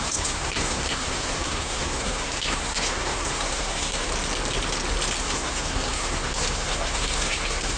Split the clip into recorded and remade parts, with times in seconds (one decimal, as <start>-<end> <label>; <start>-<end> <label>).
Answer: 0.0-4.1 remade; 4.1-5.2 recorded; 5.2-7.8 remade